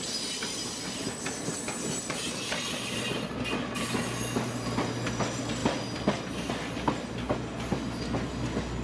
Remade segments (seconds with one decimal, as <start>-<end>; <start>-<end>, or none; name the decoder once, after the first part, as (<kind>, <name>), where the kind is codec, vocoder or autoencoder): none